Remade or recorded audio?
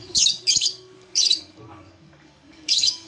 remade